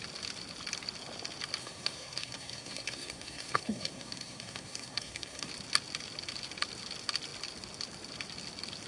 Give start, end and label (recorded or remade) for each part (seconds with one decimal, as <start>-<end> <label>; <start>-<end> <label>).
0.0-1.6 recorded; 1.6-5.5 remade; 5.5-8.9 recorded